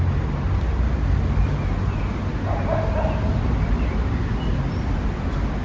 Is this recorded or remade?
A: recorded